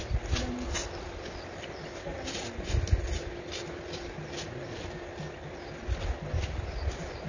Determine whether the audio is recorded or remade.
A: recorded